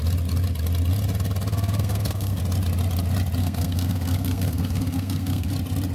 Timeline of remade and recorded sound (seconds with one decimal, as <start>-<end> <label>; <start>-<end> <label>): 0.0-1.5 recorded; 1.5-2.4 remade; 2.4-3.4 recorded; 3.4-5.5 remade; 5.5-5.9 recorded